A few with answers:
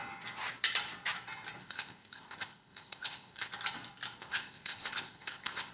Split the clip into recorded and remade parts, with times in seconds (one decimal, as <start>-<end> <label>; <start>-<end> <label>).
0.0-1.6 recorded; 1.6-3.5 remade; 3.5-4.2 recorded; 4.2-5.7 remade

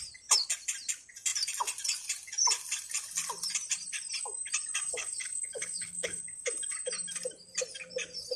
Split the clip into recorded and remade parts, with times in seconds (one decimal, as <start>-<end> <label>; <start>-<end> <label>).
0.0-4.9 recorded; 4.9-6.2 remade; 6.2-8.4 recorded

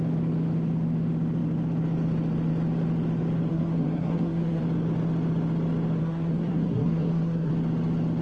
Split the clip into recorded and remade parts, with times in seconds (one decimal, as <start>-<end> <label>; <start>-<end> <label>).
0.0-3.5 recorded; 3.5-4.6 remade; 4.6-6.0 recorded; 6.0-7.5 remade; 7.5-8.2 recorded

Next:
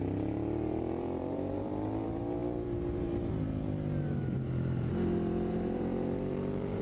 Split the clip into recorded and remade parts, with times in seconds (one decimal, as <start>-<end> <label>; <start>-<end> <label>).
0.0-6.8 remade